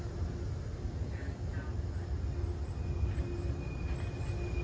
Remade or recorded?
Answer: recorded